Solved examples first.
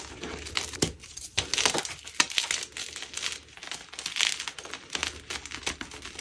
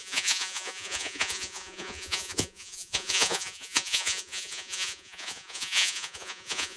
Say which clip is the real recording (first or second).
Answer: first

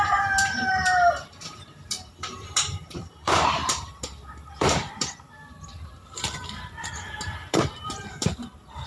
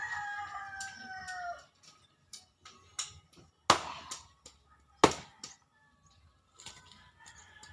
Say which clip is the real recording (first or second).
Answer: second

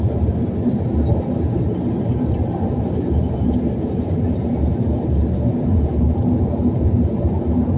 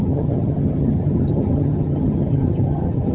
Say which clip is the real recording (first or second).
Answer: first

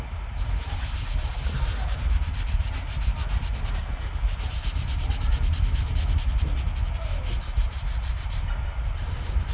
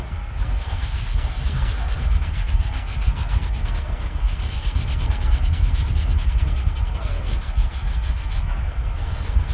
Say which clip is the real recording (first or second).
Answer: first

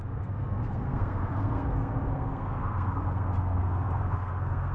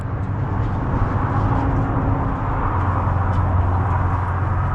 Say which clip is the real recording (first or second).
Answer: second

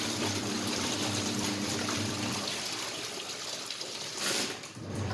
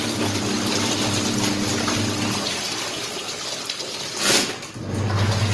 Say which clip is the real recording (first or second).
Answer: second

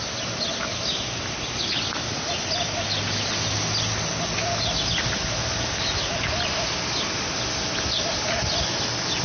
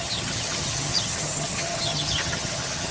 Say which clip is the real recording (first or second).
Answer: first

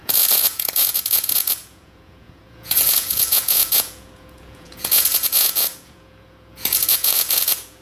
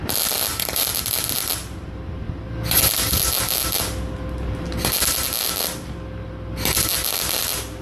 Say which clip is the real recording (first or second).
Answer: second